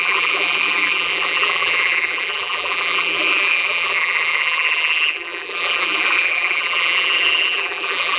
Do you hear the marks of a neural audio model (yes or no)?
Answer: yes